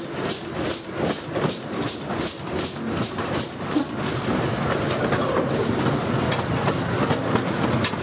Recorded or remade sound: recorded